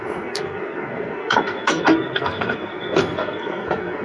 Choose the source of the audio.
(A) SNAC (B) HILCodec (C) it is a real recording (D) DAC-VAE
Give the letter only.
A